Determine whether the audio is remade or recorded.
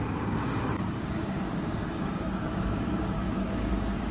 remade